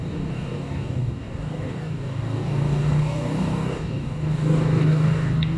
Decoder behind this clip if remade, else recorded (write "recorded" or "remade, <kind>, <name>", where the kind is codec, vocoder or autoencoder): remade, codec, DAC